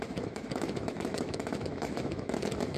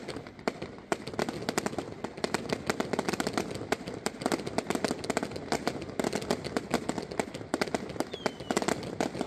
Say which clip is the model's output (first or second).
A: first